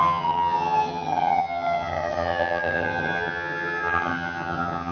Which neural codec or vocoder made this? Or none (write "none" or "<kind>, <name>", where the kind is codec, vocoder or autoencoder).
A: vocoder, HiFi-GAN